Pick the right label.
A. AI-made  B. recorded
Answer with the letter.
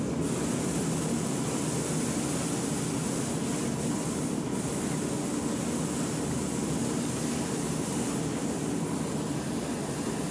B